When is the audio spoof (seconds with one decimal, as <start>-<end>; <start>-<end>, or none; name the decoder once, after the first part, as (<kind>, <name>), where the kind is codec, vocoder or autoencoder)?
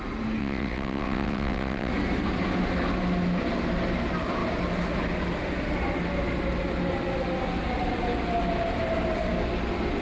0.4-1.9 (vocoder, WaveNeXt)